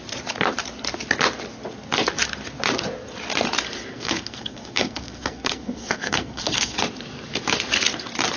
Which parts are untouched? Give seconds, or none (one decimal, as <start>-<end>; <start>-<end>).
0.0-3.9; 6.8-8.4